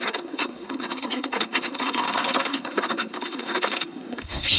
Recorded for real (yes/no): no